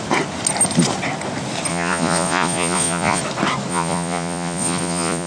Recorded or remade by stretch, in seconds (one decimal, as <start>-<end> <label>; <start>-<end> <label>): 0.0-1.7 recorded; 1.7-3.2 remade; 3.2-3.7 recorded; 3.7-5.3 remade